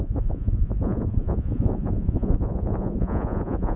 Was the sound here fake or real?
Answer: fake